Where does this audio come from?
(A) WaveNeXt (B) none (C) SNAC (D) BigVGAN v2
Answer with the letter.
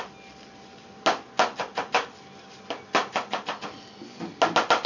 B